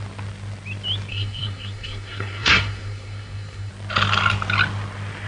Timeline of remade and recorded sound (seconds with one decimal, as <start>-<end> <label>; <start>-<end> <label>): 0.0-1.1 recorded; 1.1-3.7 remade; 3.7-5.3 recorded